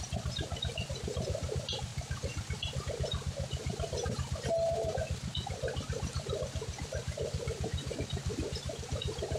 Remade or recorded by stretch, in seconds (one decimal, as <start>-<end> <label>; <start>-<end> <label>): 0.0-1.9 remade; 1.9-2.8 recorded; 2.8-9.4 remade

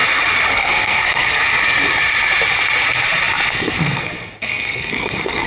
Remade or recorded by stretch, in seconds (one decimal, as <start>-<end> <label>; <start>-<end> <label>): 0.0-0.5 recorded; 0.5-1.4 remade; 1.4-3.5 recorded; 3.5-5.5 remade

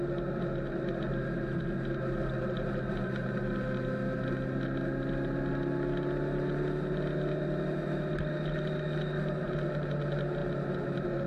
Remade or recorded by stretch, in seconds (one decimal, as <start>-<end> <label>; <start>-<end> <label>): 0.0-11.3 recorded